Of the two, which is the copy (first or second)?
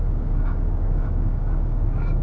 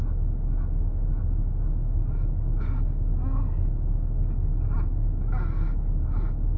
first